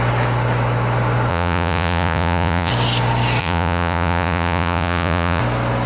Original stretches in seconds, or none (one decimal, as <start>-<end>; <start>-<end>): 0.0-1.3; 2.7-3.4; 5.4-5.9